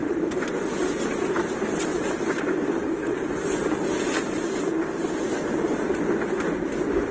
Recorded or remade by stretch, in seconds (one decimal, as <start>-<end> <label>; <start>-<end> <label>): 0.0-1.2 remade; 1.2-1.9 recorded; 1.9-2.4 remade; 2.4-3.0 recorded; 3.0-4.7 remade; 4.7-5.5 recorded; 5.5-6.0 remade; 6.0-7.1 recorded